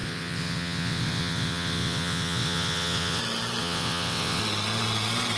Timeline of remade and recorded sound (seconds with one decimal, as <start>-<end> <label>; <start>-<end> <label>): 0.0-3.2 remade; 3.2-3.6 recorded; 3.6-4.4 remade; 4.4-5.4 recorded